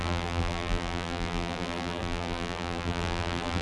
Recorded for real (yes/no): no